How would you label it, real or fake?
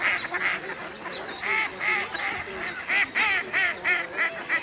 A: real